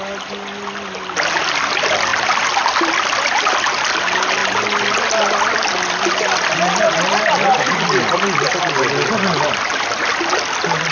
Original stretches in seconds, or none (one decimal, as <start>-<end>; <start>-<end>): 0.0-10.9